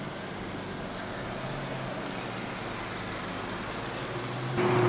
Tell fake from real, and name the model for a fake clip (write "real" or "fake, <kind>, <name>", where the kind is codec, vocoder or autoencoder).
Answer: real